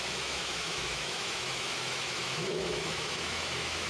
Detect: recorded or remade remade